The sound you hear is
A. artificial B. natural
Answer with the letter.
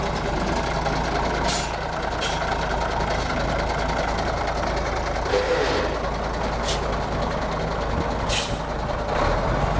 B